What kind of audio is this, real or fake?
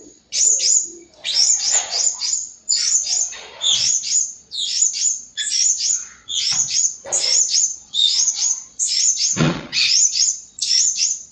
fake